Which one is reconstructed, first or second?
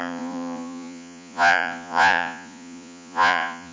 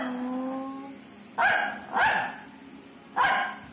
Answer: first